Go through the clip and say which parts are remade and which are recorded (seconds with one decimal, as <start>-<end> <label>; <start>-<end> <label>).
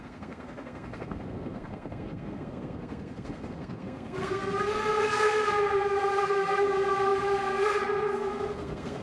0.0-9.0 remade